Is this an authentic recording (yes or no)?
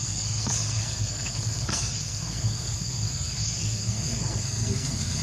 no